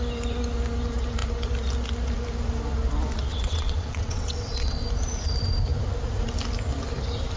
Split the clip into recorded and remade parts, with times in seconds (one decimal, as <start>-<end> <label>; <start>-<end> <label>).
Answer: 0.0-3.3 recorded; 3.3-4.8 remade; 4.8-7.4 recorded